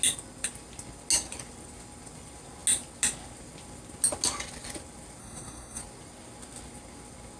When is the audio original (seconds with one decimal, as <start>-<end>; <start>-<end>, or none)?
0.0-5.2; 5.8-7.4